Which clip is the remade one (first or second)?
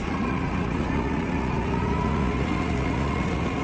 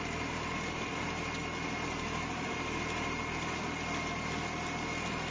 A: first